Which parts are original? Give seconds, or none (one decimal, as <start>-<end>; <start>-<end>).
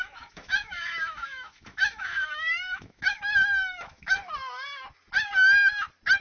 4.2-6.2